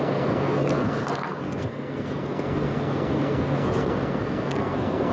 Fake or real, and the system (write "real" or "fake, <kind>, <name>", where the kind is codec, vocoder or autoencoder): fake, codec, SNAC